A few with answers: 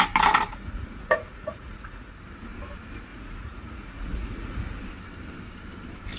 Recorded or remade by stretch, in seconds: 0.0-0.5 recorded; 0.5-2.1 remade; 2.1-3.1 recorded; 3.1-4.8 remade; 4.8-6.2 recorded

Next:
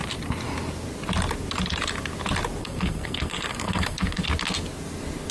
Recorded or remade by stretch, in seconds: 0.0-2.6 recorded; 2.6-4.2 remade; 4.2-5.3 recorded

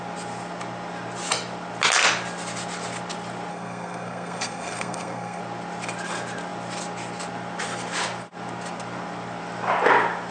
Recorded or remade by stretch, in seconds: 0.0-3.5 recorded; 3.5-5.4 remade; 5.4-10.3 recorded

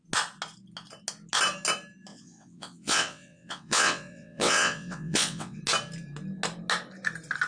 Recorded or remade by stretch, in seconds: 0.0-2.1 recorded; 2.1-5.6 remade; 5.6-7.5 recorded

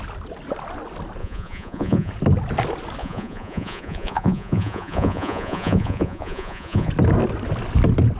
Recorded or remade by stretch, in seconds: 0.0-1.2 recorded; 1.2-2.1 remade; 2.1-3.0 recorded; 3.0-6.9 remade; 6.9-8.2 recorded